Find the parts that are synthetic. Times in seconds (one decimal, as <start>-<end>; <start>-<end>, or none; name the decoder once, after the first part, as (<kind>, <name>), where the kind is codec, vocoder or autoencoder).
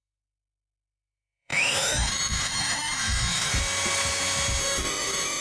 0.0-3.5 (autoencoder, DAC-VAE); 4.6-5.4